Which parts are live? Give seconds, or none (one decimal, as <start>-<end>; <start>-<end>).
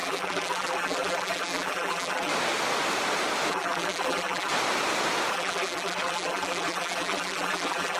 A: 2.3-3.5; 4.5-5.3